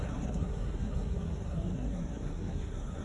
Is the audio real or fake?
fake